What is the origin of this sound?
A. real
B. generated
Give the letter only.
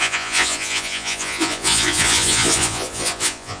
B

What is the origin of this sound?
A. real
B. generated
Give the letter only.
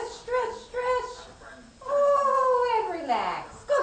A